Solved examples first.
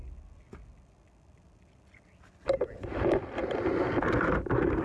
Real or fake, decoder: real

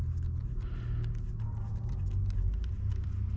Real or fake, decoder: real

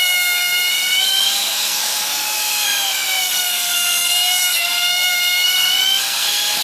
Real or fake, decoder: fake, codec, SNAC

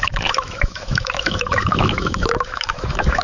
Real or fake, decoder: fake, autoencoder, DAC-VAE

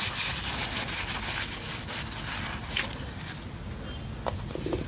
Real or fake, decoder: real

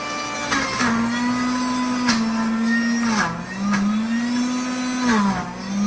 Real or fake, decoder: real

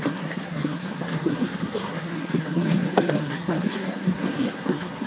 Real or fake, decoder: fake, codec, SNAC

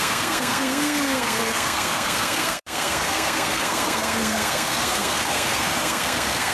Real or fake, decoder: fake, codec, SNAC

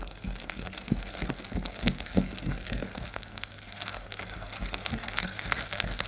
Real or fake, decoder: fake, codec, SNAC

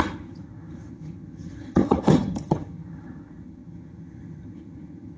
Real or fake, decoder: fake, vocoder, HiFi-GAN